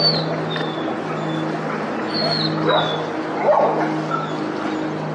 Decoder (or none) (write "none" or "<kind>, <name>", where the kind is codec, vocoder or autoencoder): none